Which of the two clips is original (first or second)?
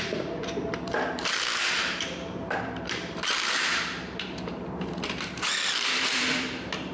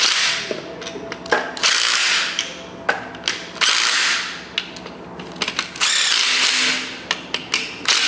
second